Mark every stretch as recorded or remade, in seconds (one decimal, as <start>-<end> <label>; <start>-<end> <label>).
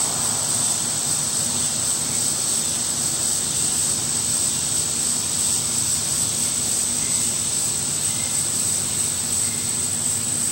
0.0-6.8 recorded; 6.8-8.0 remade; 8.0-9.9 recorded; 9.9-10.5 remade